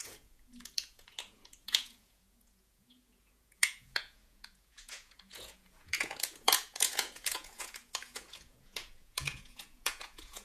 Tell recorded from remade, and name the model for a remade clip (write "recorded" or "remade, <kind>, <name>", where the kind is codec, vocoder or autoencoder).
remade, vocoder, Vocos